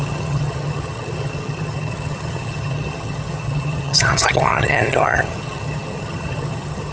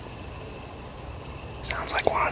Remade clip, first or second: first